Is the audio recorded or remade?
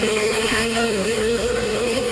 remade